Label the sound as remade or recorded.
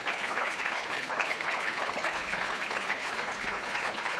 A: remade